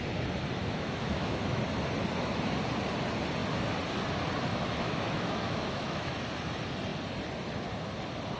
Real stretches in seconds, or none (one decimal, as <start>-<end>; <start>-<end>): 0.0-0.6; 1.6-4.5; 6.2-8.4